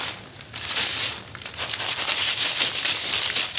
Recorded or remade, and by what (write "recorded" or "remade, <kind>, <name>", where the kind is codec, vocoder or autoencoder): recorded